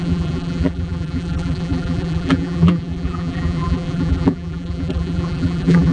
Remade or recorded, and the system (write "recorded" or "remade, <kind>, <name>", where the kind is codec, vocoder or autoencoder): remade, vocoder, BigVGAN v2